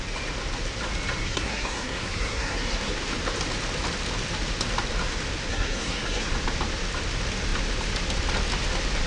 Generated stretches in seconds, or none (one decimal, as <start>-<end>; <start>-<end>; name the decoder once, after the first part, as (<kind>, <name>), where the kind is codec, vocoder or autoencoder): 1.2-2.9 (codec, SNAC); 5.5-6.3